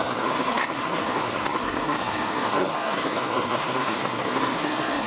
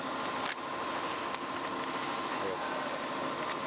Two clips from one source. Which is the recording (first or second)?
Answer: second